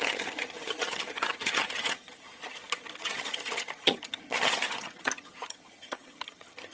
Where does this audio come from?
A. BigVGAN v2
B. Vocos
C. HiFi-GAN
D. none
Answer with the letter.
C